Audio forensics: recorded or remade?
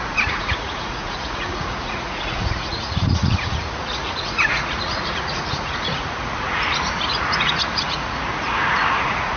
remade